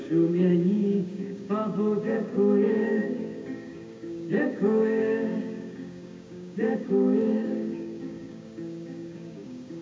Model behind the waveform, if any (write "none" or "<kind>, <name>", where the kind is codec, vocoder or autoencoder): codec, DAC